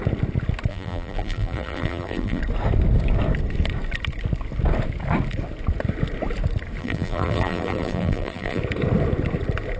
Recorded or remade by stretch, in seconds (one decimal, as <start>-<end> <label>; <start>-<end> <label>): 0.0-0.7 recorded; 0.7-2.4 remade; 2.4-6.8 recorded; 6.8-8.6 remade; 8.6-9.8 recorded